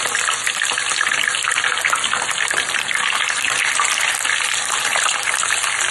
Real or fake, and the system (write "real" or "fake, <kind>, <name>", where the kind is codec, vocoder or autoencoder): real